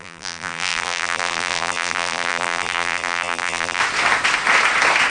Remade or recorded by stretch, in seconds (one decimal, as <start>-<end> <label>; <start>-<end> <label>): 0.0-3.8 remade; 3.8-5.1 recorded